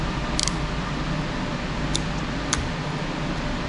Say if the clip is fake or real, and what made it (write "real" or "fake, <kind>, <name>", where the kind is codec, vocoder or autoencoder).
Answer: real